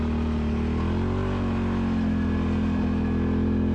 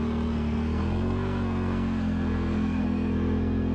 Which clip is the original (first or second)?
first